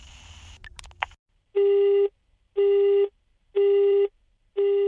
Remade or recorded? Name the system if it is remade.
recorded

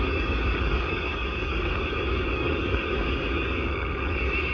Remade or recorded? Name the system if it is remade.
remade, codec, DAC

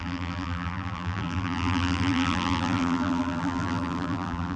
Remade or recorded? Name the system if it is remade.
remade, vocoder, BigVGAN v2